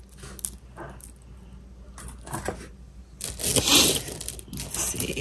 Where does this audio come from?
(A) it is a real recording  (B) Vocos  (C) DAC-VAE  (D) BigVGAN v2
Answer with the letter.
A